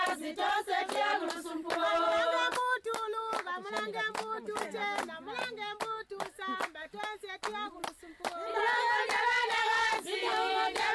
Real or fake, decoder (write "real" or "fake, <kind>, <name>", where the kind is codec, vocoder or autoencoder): real